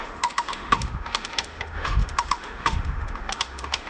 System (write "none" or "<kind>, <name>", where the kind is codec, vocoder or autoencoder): autoencoder, DAC-VAE